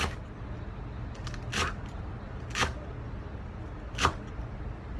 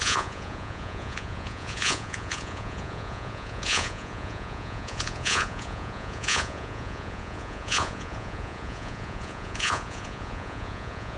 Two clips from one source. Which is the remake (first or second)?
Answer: second